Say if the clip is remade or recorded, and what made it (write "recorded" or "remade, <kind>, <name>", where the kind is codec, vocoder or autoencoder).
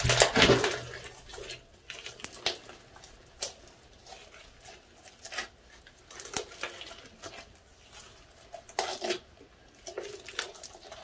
recorded